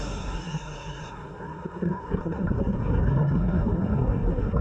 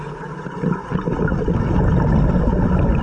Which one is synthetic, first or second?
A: first